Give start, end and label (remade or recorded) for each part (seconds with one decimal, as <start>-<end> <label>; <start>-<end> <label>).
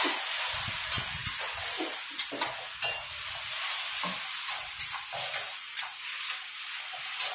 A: 0.0-7.3 recorded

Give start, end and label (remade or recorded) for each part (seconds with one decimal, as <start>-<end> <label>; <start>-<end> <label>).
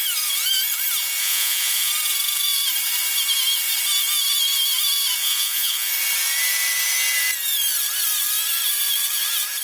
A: 0.0-1.2 recorded; 1.2-1.9 remade; 1.9-5.2 recorded; 5.2-5.9 remade; 5.9-9.6 recorded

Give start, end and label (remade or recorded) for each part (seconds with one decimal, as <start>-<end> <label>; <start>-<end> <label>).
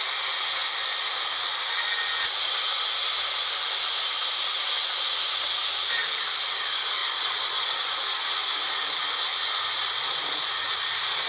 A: 0.0-7.0 recorded; 7.0-7.9 remade; 7.9-9.7 recorded; 9.7-10.7 remade; 10.7-11.3 recorded